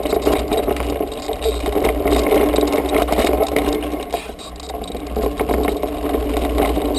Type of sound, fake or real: real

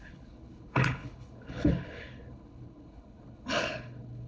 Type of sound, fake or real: fake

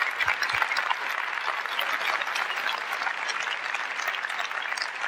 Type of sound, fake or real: real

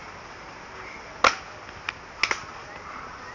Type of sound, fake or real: real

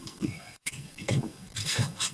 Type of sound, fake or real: fake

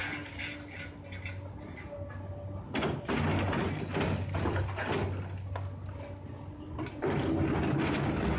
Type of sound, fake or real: real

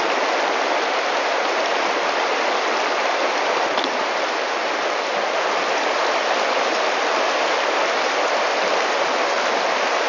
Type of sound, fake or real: real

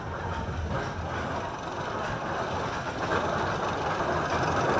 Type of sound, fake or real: real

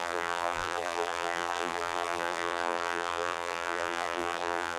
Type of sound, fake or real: fake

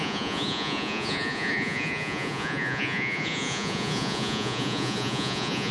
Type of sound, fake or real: fake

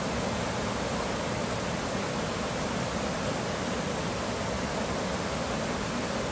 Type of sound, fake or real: real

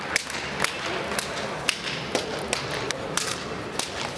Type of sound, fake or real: real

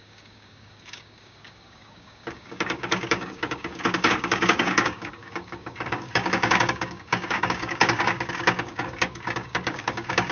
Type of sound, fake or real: fake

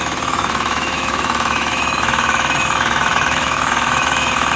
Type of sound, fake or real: fake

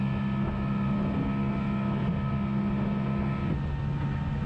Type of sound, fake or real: real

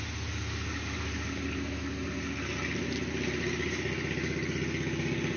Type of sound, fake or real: real